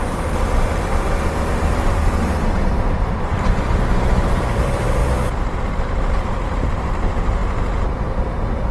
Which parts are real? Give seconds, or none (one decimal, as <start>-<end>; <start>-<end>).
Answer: 5.0-5.6